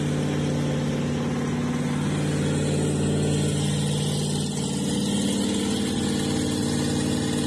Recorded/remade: recorded